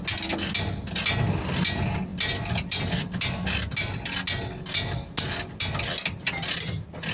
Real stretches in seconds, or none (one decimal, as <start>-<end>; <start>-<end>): 0.0-7.1